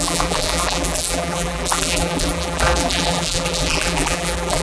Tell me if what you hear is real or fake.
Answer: fake